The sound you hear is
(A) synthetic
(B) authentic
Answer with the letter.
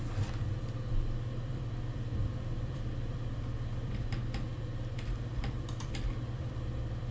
A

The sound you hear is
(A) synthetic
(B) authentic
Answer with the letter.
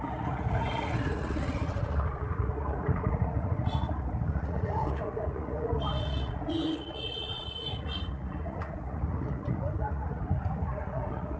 A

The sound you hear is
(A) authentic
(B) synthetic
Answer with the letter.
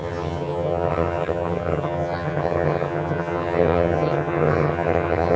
B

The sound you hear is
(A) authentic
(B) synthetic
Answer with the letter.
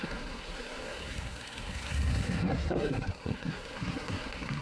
B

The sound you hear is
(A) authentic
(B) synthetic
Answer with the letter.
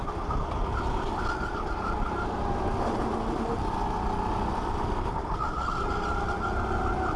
A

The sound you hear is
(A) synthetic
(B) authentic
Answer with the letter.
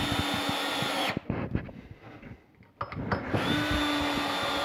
B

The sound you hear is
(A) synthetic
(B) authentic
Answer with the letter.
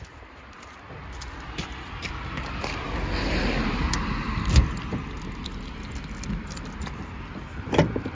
A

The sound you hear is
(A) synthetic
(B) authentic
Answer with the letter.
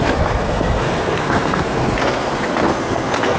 A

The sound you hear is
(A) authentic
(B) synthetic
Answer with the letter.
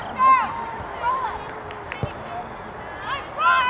A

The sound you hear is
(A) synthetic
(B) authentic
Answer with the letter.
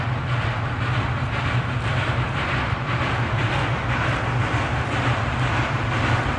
A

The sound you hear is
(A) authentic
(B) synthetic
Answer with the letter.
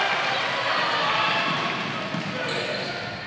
A